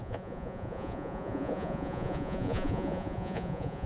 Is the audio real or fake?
fake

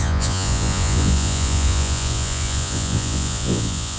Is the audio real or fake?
fake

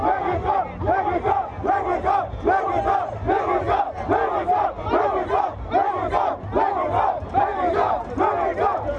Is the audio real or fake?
real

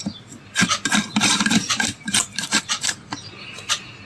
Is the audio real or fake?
real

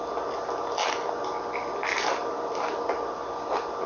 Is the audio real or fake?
real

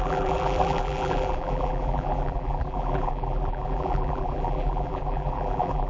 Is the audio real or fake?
fake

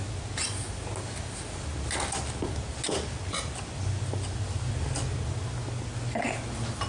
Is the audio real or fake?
real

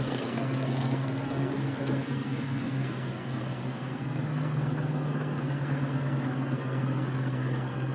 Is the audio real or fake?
fake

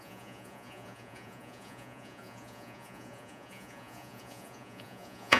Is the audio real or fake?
fake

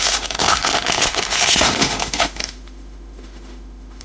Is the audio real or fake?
fake